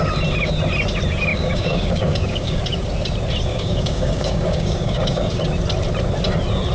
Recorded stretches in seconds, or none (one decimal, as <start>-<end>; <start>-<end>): 0.0-1.3; 2.6-3.5; 5.4-6.7